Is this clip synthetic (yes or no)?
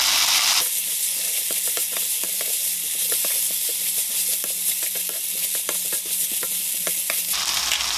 no